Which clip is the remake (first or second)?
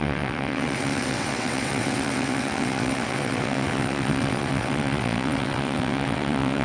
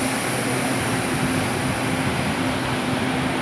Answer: first